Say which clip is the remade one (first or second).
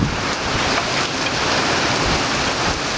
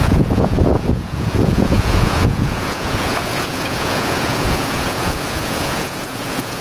second